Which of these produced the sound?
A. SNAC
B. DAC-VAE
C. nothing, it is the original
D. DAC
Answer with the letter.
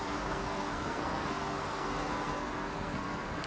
A